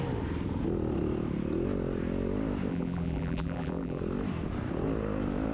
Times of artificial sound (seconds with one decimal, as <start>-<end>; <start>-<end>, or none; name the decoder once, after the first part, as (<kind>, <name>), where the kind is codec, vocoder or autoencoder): 2.7-4.0 (vocoder, BigVGAN v2)